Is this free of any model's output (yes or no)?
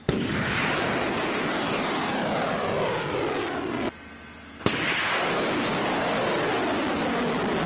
yes